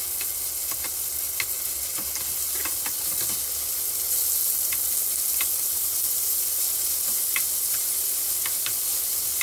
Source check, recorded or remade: recorded